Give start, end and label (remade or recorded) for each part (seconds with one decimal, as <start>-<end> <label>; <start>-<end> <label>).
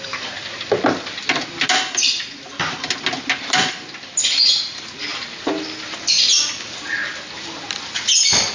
0.0-8.5 recorded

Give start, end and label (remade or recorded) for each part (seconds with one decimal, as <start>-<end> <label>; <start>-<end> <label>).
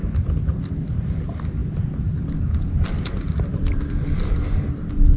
0.0-5.2 recorded